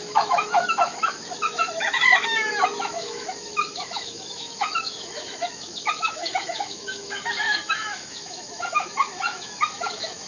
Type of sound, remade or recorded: remade